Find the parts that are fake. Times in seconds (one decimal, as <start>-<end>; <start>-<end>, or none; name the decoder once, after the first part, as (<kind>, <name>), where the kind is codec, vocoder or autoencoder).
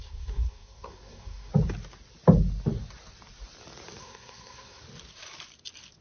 0.0-1.5 (codec, SNAC); 4.0-4.8